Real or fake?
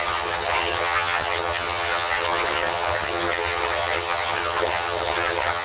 fake